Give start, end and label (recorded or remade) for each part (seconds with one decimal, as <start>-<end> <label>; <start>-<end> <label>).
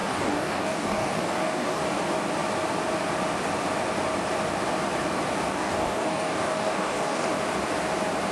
0.0-1.8 remade; 1.8-5.5 recorded; 5.5-7.3 remade; 7.3-8.3 recorded